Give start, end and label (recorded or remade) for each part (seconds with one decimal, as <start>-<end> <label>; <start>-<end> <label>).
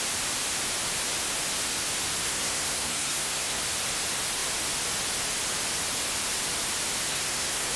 0.0-2.2 recorded; 2.2-3.6 remade; 3.6-7.1 recorded; 7.1-7.8 remade